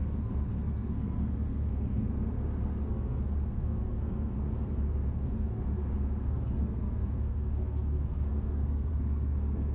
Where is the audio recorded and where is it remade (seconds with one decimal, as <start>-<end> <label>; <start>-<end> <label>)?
0.0-9.7 remade